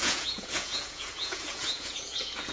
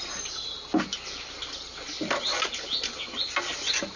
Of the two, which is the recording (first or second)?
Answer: second